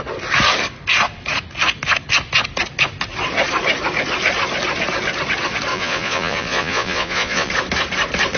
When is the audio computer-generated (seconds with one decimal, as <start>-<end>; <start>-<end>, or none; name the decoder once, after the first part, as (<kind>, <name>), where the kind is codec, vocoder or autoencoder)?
5.7-7.5 (vocoder, Vocos)